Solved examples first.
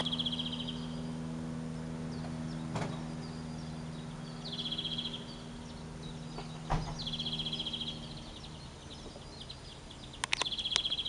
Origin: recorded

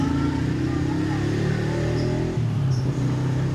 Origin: recorded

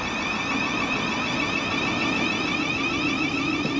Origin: recorded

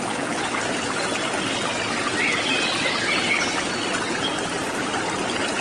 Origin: recorded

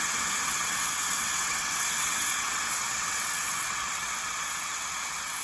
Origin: remade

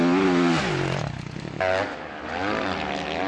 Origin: recorded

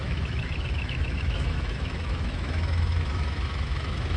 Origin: remade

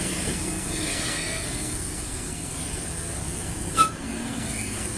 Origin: remade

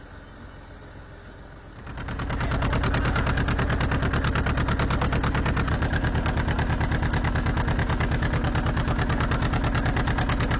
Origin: recorded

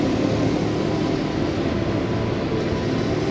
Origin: recorded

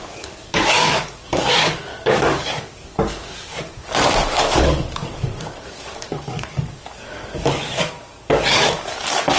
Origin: remade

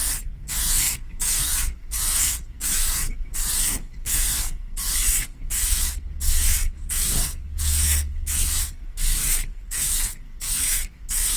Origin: remade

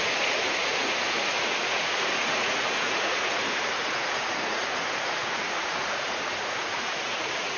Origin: remade